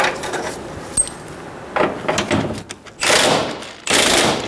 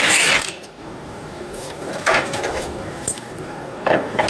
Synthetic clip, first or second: second